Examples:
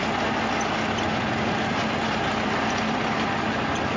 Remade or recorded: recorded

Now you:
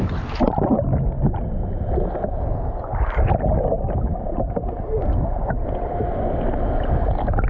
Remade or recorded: recorded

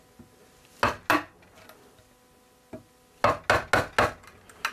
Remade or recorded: recorded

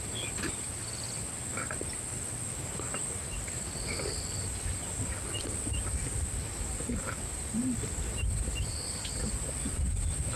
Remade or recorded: recorded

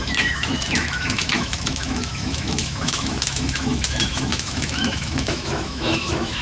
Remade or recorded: remade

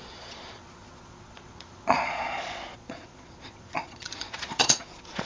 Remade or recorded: remade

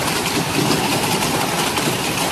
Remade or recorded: remade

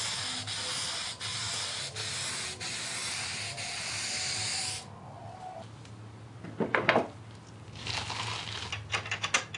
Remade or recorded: recorded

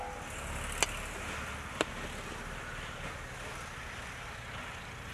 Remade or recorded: recorded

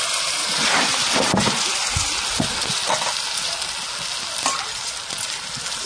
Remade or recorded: recorded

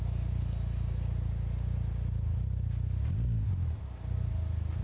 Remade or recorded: recorded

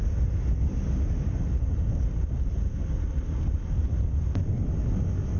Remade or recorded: recorded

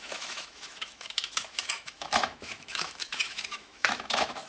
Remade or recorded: remade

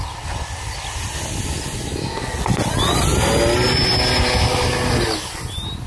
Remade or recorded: recorded